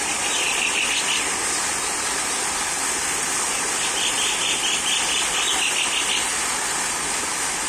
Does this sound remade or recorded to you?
recorded